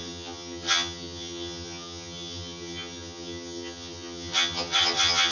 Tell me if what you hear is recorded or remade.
remade